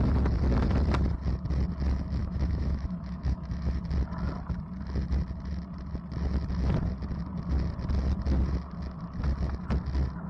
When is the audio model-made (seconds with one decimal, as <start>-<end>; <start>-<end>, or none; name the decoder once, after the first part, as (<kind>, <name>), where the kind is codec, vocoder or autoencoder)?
2.2-3.8 (autoencoder, DAC-VAE)